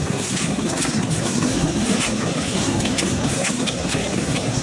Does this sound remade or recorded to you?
remade